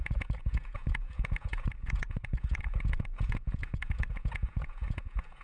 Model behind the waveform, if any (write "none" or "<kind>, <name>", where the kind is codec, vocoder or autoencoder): vocoder, Vocos